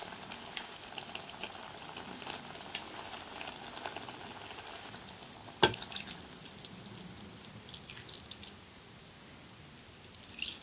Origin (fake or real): real